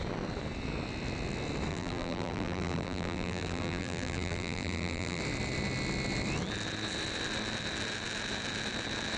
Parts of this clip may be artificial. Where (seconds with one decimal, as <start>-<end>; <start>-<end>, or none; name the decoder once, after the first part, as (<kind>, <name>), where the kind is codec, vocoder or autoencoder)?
1.7-5.2 (vocoder, BigVGAN v2)